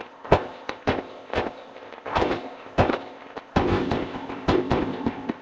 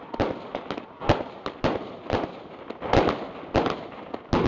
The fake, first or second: first